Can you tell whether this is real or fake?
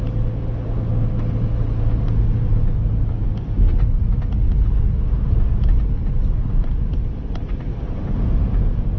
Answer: real